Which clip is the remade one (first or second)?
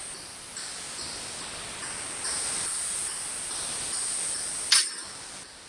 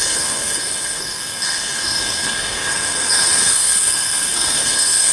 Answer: second